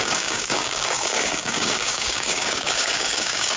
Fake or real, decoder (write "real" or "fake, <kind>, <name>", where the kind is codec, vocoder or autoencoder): fake, codec, DAC